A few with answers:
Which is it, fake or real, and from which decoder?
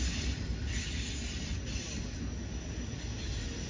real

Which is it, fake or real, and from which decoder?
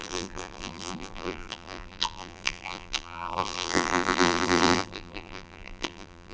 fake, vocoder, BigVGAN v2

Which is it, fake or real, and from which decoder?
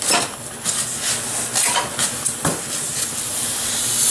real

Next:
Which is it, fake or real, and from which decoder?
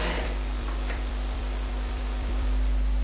fake, vocoder, BigVGAN v2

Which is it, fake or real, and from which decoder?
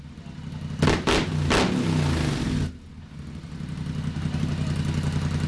real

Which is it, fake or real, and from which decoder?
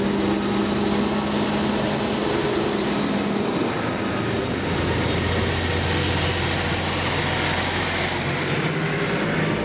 real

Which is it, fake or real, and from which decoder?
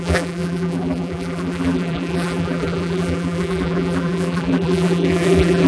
fake, vocoder, BigVGAN v2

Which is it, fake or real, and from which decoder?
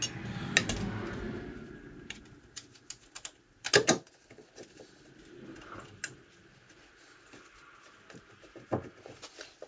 real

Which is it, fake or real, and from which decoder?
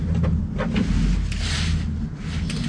real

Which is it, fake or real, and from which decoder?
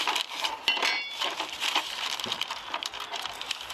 fake, vocoder, BigVGAN v2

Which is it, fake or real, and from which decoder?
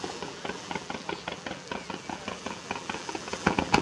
fake, vocoder, BigVGAN v2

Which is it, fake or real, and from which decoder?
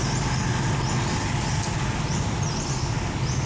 real